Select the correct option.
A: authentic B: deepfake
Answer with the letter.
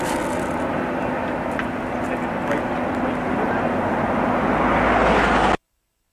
A